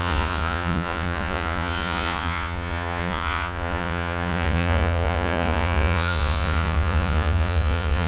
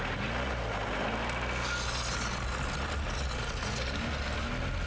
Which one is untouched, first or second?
second